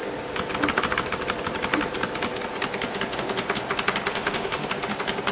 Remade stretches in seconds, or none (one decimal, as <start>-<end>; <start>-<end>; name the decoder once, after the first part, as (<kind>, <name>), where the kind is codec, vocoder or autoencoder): 4.1-4.7 (autoencoder, DAC-VAE)